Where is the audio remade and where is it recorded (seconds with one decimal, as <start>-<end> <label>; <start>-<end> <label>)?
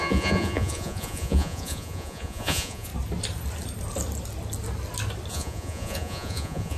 0.0-2.9 remade; 2.9-5.3 recorded; 5.3-6.8 remade